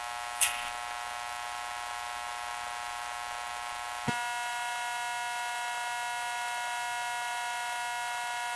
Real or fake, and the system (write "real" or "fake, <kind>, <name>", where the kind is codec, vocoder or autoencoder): real